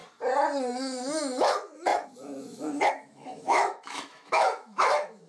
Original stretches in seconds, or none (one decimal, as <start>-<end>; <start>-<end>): 0.0-0.8